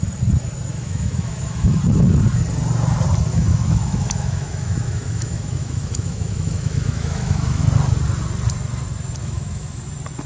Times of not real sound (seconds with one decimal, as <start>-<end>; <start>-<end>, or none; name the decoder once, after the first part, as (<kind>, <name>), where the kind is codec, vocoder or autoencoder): 0.7-1.8 (autoencoder, DAC-VAE); 3.3-7.6; 9.2-9.9